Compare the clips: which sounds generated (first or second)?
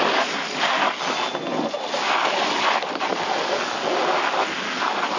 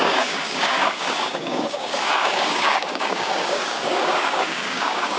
second